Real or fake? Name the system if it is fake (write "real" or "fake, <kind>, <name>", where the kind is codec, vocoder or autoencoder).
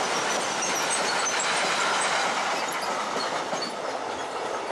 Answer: real